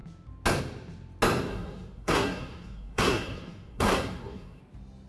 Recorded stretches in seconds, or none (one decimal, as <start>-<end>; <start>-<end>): 0.0-1.5; 4.6-5.1